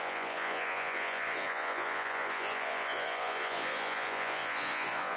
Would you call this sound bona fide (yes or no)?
no